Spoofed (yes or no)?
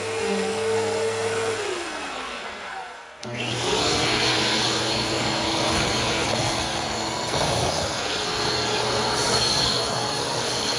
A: yes